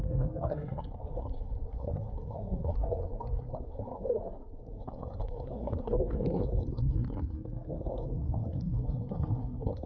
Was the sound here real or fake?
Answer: fake